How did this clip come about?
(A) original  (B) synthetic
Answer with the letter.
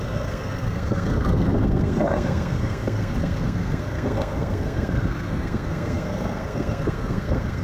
B